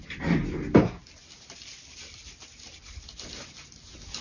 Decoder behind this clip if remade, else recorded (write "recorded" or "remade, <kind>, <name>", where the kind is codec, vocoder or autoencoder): recorded